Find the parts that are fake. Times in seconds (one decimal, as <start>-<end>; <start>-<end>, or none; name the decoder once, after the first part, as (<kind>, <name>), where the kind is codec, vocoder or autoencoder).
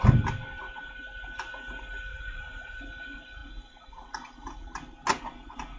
2.1-2.8 (vocoder, Vocos)